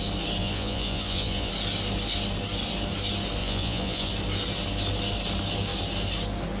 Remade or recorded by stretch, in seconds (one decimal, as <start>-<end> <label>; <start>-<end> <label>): 0.0-0.4 recorded; 0.4-1.5 remade; 1.5-3.4 recorded; 3.4-4.1 remade; 4.1-6.6 recorded